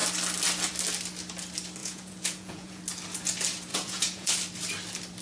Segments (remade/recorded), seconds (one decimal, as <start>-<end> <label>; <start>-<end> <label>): 0.0-1.8 recorded; 1.8-2.8 remade; 2.8-3.7 recorded; 3.7-4.3 remade; 4.3-5.2 recorded